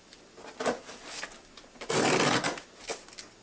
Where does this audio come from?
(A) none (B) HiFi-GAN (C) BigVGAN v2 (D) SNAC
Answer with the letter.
A